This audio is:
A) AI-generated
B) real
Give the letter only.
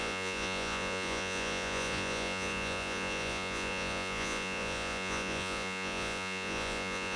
A